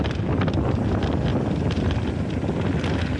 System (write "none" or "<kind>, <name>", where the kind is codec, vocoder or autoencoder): none